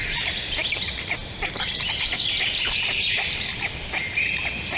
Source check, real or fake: real